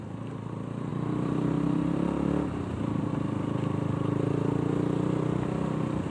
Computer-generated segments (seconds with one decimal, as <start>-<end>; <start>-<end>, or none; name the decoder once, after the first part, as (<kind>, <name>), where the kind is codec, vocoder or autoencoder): none